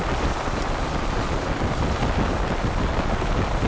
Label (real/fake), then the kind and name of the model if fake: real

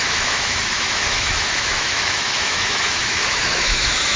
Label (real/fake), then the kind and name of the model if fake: fake, autoencoder, DAC-VAE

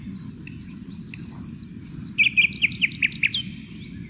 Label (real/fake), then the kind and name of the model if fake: real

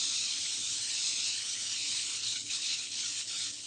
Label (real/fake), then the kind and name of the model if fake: fake, codec, HILCodec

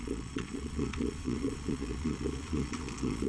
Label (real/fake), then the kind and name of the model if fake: fake, vocoder, Vocos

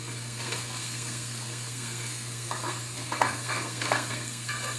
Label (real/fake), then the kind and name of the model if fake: fake, codec, SNAC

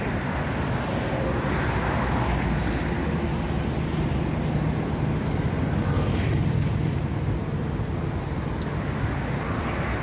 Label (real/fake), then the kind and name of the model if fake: real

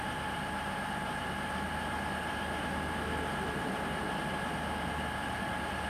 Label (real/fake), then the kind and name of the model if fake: real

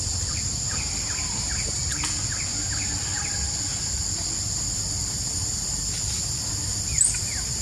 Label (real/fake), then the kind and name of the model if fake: real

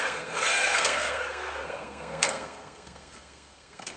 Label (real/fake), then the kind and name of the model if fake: fake, codec, SNAC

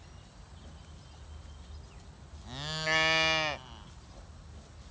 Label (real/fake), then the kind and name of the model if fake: real